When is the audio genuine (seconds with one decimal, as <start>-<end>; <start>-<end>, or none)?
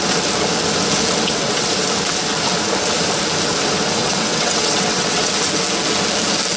0.0-1.2; 1.7-4.0; 5.3-6.6